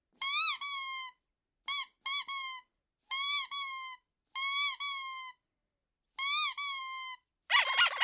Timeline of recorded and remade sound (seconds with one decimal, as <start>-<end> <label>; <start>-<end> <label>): 0.0-8.0 recorded